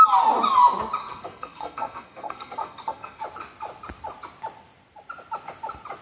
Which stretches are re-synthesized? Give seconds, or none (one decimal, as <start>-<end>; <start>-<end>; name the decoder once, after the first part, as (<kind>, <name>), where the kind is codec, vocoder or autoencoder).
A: 1.0-3.2 (codec, SNAC)